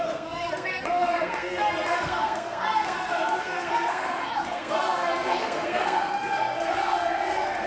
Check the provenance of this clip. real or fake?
fake